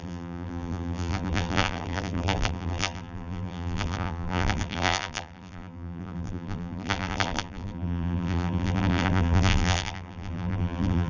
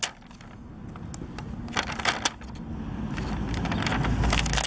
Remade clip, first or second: first